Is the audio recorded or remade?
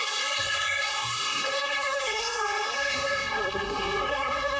remade